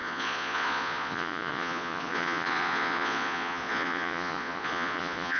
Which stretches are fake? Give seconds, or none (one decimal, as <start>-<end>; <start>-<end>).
0.0-5.4